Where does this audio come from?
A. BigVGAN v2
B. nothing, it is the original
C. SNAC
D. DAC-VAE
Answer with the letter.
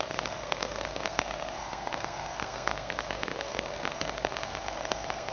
C